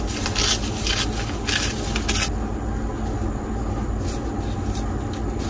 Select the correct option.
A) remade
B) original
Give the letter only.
B